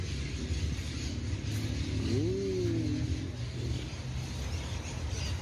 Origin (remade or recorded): recorded